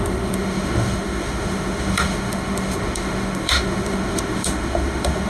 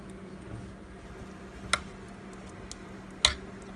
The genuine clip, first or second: second